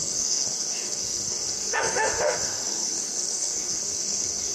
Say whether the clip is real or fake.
fake